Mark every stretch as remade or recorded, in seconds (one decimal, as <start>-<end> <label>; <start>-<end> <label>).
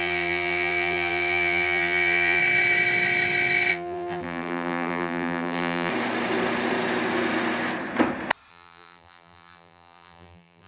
0.0-2.4 remade; 2.4-3.7 recorded; 3.7-5.9 remade; 5.9-8.5 recorded; 8.5-10.7 remade